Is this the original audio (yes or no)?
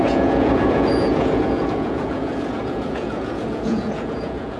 no